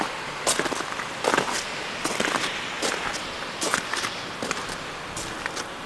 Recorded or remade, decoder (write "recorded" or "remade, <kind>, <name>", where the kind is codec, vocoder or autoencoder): recorded